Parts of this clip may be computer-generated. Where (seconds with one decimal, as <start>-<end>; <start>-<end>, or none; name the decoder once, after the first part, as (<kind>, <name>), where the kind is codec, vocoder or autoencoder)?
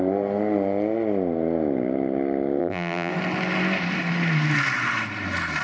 2.6-3.1 (vocoder, BigVGAN v2)